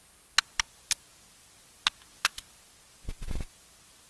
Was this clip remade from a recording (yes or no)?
no